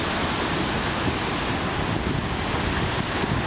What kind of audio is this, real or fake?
real